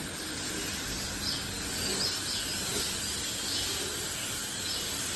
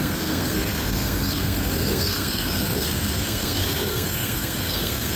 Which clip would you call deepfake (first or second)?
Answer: second